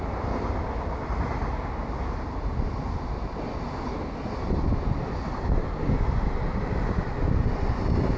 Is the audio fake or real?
real